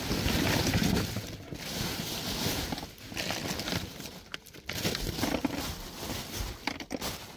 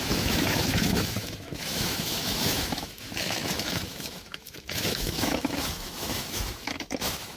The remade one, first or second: second